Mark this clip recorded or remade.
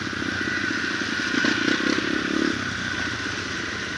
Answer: recorded